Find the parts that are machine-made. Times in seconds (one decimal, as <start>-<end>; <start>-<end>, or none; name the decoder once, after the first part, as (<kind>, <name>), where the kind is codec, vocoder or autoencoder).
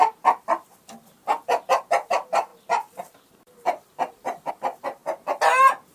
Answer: 0.0-1.2 (vocoder, BigVGAN v2); 2.1-5.0